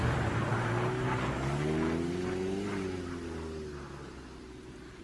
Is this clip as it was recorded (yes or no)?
yes